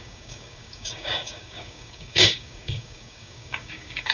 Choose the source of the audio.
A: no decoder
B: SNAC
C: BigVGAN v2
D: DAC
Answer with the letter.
D